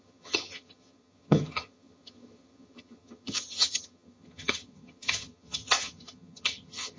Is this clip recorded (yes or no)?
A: no